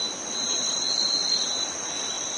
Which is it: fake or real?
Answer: real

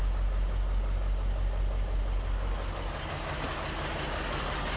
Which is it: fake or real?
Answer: real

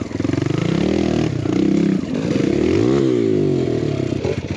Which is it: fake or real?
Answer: real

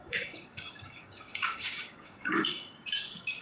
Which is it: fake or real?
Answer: fake